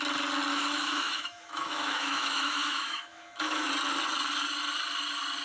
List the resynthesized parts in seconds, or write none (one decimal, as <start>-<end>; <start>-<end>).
0.5-3.7